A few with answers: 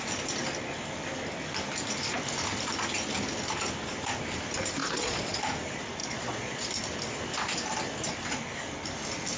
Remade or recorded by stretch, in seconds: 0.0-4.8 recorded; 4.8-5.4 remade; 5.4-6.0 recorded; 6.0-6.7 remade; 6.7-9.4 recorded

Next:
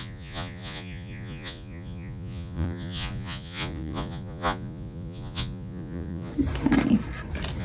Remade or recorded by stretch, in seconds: 0.0-6.3 remade; 6.3-7.6 recorded

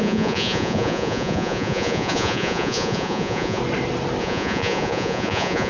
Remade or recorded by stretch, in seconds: 0.0-3.6 remade; 3.6-4.2 recorded; 4.2-5.7 remade

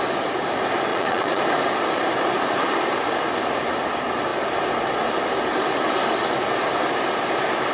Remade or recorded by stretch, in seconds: 0.0-0.9 recorded; 0.9-1.4 remade; 1.4-7.7 recorded

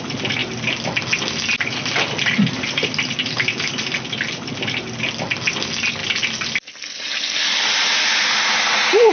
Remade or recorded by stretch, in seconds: 0.0-9.1 recorded

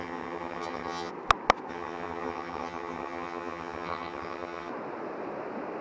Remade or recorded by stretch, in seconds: 0.0-1.1 remade; 1.1-1.7 recorded; 1.7-4.7 remade; 4.7-5.8 recorded

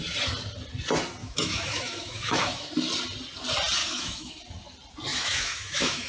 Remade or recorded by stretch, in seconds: 0.0-1.2 recorded; 1.2-2.7 remade; 2.7-3.8 recorded; 3.8-4.3 remade; 4.3-5.1 recorded; 5.1-6.1 remade